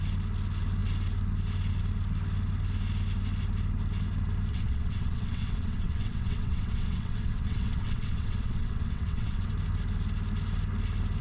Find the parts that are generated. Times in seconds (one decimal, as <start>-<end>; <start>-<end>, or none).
4.5-9.5

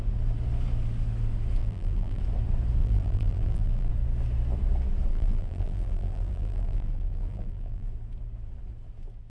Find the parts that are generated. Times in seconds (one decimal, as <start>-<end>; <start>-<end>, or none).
1.6-2.2; 2.8-3.9; 5.1-7.9

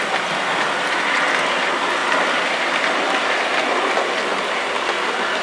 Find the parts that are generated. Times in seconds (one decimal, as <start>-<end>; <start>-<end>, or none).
none